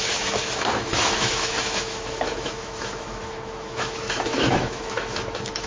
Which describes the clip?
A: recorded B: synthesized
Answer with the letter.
B